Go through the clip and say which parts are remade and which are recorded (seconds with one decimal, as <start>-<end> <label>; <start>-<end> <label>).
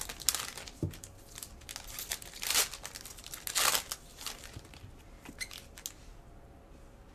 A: 0.0-2.1 recorded; 2.1-2.6 remade; 2.6-4.1 recorded; 4.1-5.3 remade; 5.3-7.1 recorded